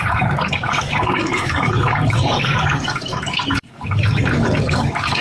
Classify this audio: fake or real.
fake